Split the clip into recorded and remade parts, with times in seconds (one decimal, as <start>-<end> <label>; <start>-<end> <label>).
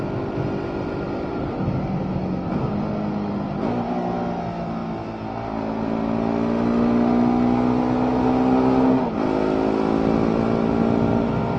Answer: 0.0-11.6 recorded